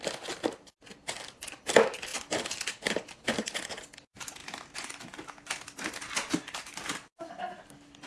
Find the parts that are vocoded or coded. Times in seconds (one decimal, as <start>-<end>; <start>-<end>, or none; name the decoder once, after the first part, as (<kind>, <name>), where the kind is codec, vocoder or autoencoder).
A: none